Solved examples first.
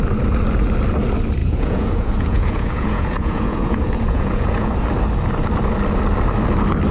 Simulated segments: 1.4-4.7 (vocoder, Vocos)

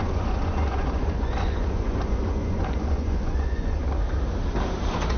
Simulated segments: 0.0-3.8 (vocoder, Vocos)

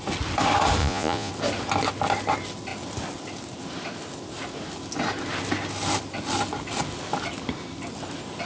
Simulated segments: 0.8-1.3 (vocoder, Vocos)

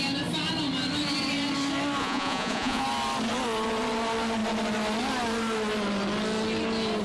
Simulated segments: 2.0-2.8 (vocoder, Vocos)